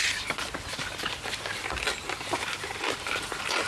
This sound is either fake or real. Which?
real